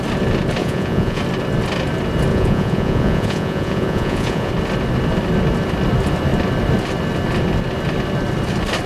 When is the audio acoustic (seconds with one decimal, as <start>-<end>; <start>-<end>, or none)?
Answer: 0.0-0.6; 1.2-2.3; 4.5-8.9